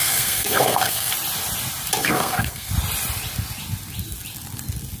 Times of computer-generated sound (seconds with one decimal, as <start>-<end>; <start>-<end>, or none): 0.0-1.1; 2.0-2.7